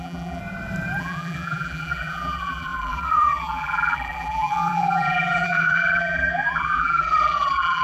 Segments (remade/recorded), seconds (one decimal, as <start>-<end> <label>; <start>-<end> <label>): 0.0-0.4 remade; 0.4-1.0 recorded; 1.0-7.8 remade